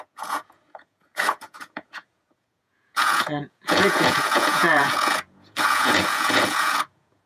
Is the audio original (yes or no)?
no